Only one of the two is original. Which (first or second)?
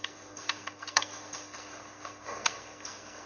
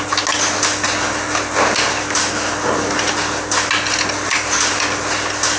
second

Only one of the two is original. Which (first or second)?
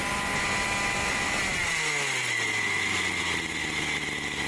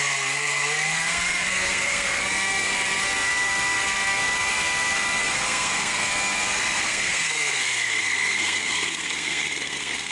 first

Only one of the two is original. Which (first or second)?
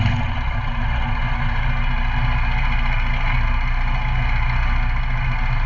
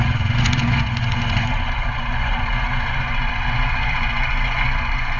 first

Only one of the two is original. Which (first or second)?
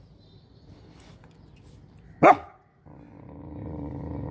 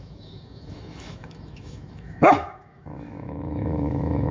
first